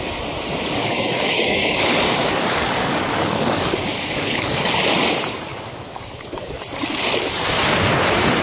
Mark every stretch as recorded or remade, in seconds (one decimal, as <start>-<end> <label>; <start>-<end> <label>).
0.0-0.8 recorded; 0.8-4.7 remade; 4.7-5.5 recorded; 5.5-6.6 remade; 6.6-8.4 recorded